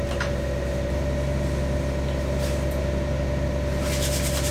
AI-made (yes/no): no